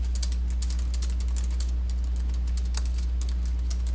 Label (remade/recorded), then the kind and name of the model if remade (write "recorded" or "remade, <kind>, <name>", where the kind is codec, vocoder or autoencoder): recorded